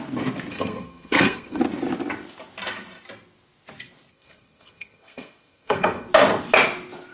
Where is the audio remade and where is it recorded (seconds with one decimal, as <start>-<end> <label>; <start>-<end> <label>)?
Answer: 0.0-0.5 recorded; 0.5-1.6 remade; 1.6-4.1 recorded; 4.1-6.1 remade; 6.1-7.1 recorded